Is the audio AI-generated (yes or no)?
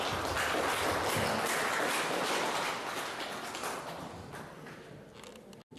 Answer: no